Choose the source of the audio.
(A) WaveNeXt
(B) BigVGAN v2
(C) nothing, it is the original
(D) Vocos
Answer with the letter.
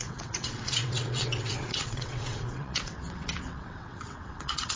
A